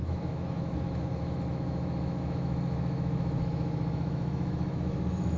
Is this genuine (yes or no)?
no